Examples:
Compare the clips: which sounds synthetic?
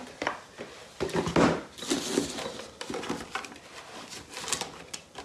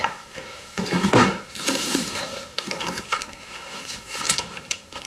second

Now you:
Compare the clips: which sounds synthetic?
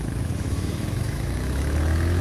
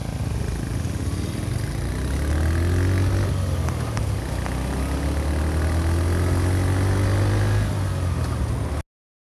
first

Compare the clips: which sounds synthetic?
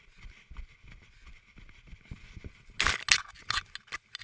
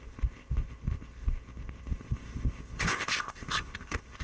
second